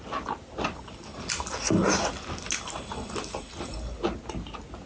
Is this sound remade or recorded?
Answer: recorded